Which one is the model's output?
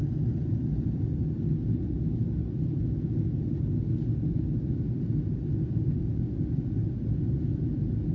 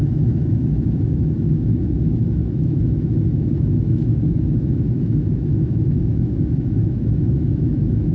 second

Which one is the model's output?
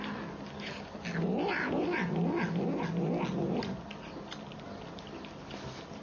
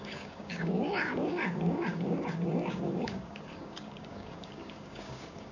second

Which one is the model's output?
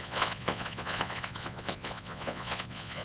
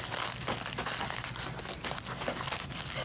first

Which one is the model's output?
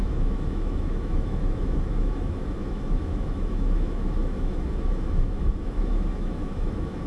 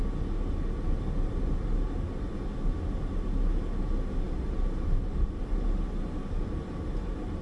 first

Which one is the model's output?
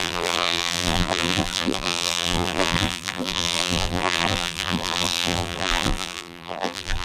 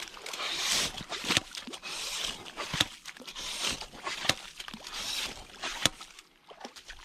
first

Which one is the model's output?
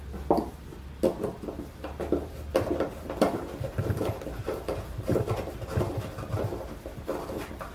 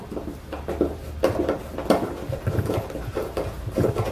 first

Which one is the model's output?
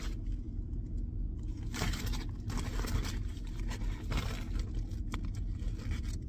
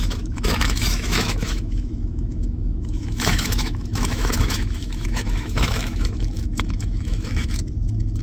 second